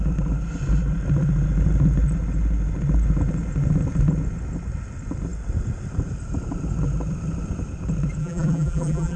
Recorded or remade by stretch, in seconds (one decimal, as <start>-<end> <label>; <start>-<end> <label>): 0.0-8.2 recorded; 8.2-9.2 remade